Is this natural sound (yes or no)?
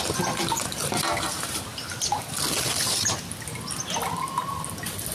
no